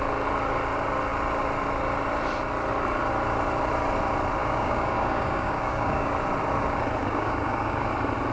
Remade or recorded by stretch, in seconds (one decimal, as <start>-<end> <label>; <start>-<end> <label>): 0.0-4.4 recorded; 4.4-6.1 remade; 6.1-7.0 recorded; 7.0-7.9 remade; 7.9-8.3 recorded

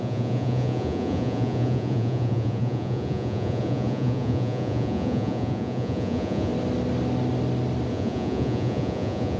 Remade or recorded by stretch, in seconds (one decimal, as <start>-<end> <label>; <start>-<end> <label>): 0.0-6.5 remade; 6.5-7.9 recorded; 7.9-9.4 remade

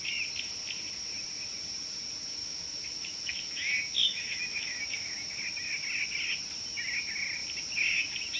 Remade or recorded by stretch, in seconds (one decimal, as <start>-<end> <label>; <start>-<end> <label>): 0.0-2.4 recorded; 2.4-5.4 remade; 5.4-8.4 recorded

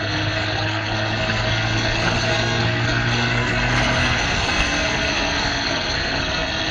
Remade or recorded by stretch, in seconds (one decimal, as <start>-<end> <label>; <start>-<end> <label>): 0.0-6.7 remade

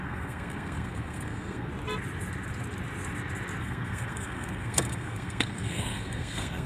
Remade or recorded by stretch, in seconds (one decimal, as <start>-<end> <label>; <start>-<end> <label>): 0.0-1.7 remade; 1.7-3.6 recorded; 3.6-6.7 remade